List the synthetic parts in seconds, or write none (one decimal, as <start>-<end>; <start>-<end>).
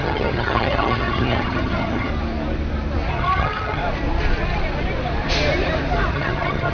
0.0-2.1; 3.1-3.8; 6.1-6.7